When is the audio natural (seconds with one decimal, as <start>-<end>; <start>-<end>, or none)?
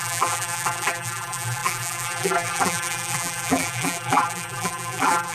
none